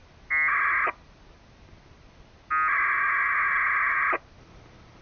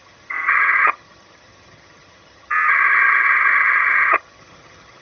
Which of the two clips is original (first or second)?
first